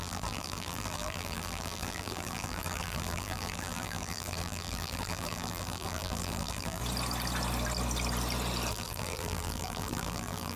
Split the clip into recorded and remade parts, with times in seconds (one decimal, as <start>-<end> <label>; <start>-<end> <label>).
0.0-6.8 remade; 6.8-8.7 recorded; 8.7-10.6 remade